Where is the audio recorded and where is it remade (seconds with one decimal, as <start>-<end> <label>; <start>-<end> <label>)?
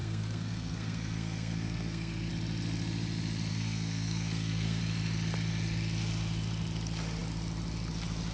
0.0-2.3 remade; 2.3-3.5 recorded; 3.5-4.8 remade; 4.8-8.3 recorded